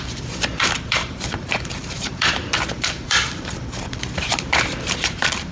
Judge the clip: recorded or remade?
remade